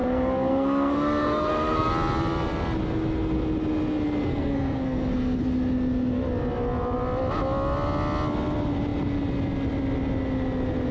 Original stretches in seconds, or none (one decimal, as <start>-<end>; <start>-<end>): 1.9-4.3; 5.4-10.9